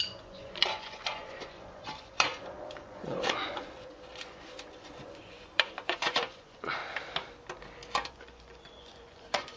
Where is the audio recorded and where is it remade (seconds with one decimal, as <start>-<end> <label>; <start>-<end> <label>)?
0.0-6.8 remade; 6.8-8.1 recorded; 8.1-9.6 remade